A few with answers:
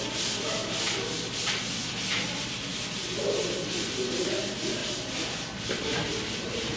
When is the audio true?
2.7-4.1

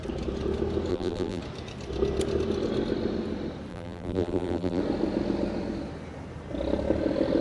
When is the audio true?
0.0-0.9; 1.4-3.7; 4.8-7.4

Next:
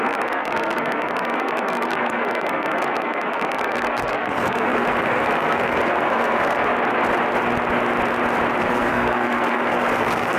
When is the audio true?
6.7-8.6